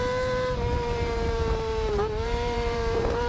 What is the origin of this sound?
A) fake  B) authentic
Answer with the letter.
A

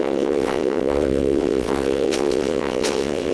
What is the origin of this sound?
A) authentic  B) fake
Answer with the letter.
B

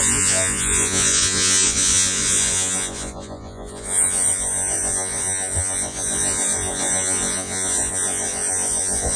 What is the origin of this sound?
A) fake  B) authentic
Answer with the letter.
A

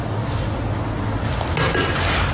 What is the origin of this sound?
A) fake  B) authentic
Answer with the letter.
B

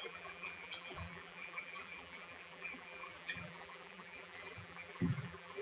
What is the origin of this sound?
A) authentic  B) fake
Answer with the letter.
B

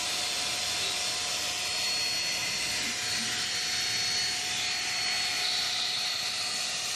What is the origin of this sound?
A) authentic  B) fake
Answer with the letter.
A